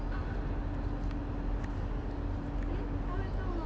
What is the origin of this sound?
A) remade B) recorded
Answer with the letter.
B